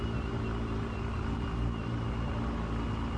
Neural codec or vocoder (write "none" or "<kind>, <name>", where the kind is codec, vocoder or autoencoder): none